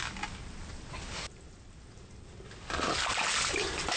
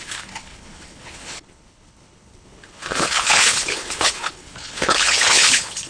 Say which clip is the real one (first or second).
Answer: first